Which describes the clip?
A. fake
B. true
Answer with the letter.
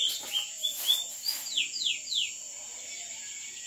B